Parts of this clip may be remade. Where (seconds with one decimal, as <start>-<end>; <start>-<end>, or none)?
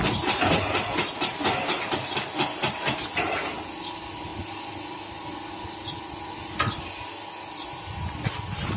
none